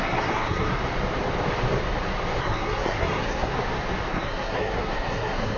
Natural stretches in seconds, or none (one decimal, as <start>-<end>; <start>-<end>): 0.8-2.4; 3.5-4.1